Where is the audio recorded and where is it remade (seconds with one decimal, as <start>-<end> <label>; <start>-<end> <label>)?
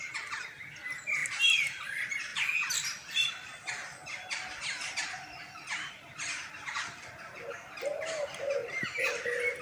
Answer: 0.0-9.6 recorded